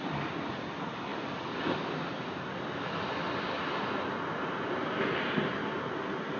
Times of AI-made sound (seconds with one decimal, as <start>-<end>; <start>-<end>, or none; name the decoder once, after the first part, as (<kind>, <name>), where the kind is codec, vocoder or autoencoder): none